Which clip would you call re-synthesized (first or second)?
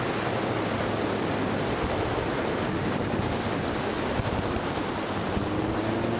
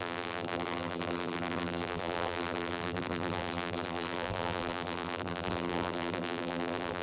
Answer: second